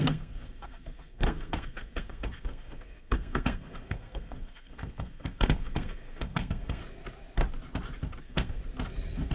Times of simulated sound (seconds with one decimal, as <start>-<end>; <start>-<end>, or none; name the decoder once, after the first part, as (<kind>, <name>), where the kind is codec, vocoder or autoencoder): 0.0-6.8 (codec, SNAC); 8.2-8.6